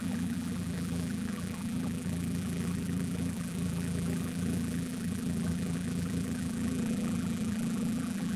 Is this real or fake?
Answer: fake